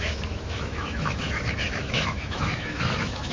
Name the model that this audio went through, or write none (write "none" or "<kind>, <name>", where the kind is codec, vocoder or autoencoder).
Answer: autoencoder, DAC-VAE